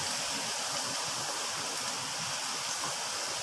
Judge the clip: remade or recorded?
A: recorded